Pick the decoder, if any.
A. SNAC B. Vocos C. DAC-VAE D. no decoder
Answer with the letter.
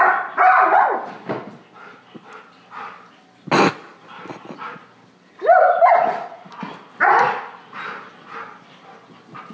D